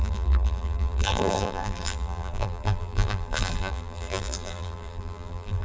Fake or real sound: fake